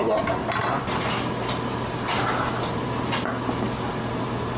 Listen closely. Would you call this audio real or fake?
real